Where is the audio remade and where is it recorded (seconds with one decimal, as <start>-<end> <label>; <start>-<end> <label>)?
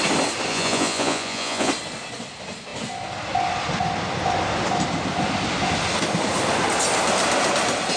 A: 0.0-0.5 recorded; 0.5-1.7 remade; 1.7-8.0 recorded